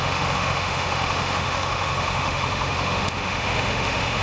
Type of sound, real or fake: fake